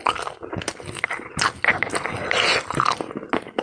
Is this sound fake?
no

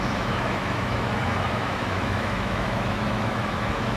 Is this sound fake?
yes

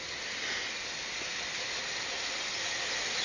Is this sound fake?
no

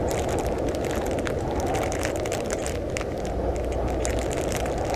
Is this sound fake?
no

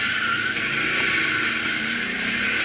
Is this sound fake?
no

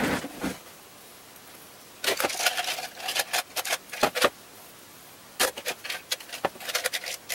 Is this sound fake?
no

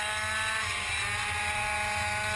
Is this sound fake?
no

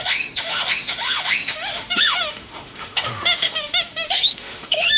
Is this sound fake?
yes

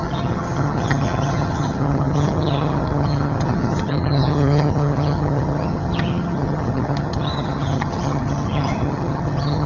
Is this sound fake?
yes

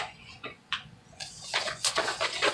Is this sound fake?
yes